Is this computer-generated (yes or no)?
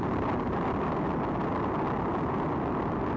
no